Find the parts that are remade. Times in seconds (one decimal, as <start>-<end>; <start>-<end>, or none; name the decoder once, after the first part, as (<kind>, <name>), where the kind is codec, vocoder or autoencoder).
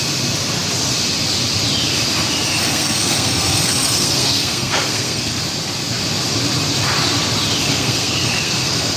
2.6-5.4 (codec, SNAC); 7.7-9.0